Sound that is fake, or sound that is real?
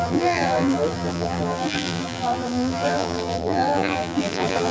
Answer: fake